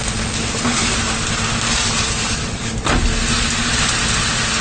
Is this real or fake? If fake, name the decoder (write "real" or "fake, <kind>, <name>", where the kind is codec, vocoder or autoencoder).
real